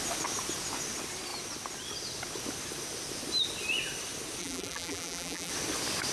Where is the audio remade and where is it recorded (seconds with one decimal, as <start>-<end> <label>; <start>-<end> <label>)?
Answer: 0.0-4.4 recorded; 4.4-5.5 remade; 5.5-6.1 recorded